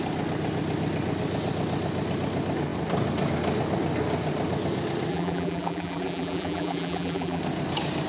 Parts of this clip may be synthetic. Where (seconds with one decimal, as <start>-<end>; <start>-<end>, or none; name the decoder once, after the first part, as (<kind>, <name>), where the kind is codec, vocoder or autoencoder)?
5.1-7.4 (vocoder, BigVGAN v2)